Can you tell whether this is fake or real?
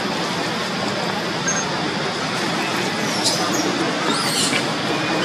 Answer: real